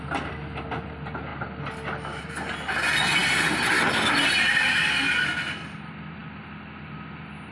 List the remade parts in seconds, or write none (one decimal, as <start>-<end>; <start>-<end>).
none